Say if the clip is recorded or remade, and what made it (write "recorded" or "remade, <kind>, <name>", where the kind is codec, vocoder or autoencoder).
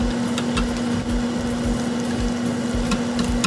recorded